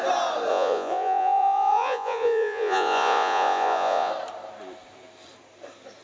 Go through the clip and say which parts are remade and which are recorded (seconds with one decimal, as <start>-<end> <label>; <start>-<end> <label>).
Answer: 0.0-0.5 recorded; 0.5-4.1 remade; 4.1-6.0 recorded